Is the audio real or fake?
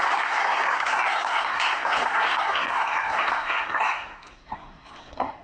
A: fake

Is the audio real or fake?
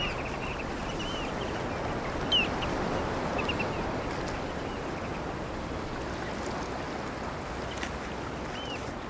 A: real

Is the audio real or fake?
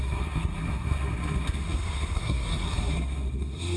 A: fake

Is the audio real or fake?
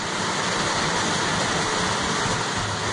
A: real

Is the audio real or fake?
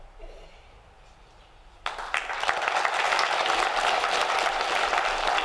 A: real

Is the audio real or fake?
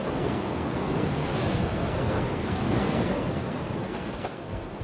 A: fake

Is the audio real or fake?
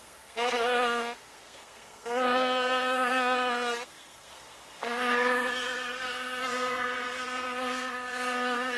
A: fake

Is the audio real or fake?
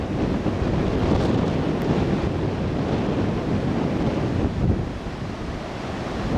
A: real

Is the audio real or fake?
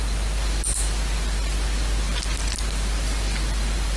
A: real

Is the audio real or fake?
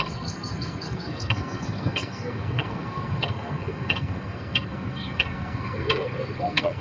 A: fake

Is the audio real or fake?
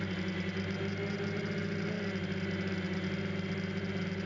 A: real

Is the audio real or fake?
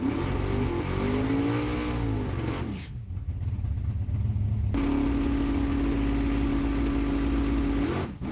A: real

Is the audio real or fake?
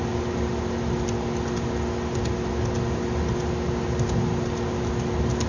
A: real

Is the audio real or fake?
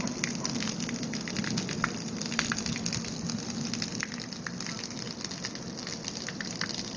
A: real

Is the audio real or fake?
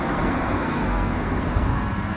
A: fake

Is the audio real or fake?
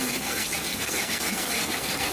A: fake